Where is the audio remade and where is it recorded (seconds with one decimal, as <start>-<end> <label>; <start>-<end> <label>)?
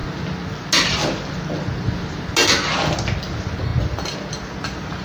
0.0-5.0 recorded